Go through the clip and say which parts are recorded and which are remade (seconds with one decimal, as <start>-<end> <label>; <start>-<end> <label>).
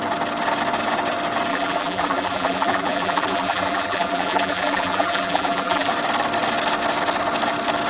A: 0.0-1.5 recorded; 1.5-5.9 remade; 5.9-7.9 recorded